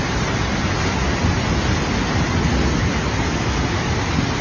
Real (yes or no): yes